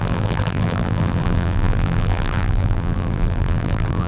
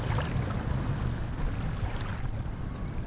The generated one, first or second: first